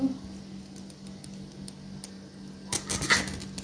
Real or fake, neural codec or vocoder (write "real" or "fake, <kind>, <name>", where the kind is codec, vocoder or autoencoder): real